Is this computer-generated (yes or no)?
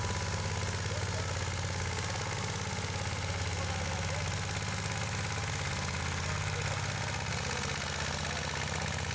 no